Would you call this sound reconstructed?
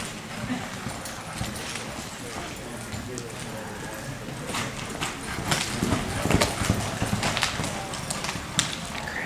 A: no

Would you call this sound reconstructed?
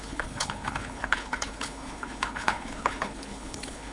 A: yes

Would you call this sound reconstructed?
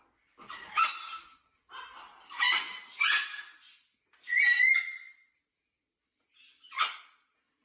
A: no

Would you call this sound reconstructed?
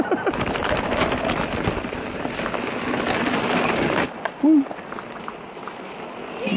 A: no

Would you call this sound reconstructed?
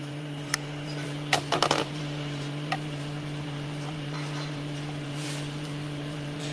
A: yes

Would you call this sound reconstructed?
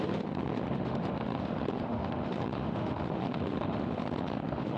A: yes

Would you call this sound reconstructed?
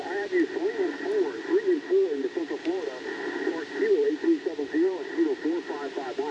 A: no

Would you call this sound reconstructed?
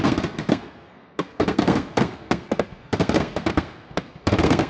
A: yes